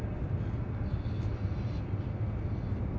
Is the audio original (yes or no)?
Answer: yes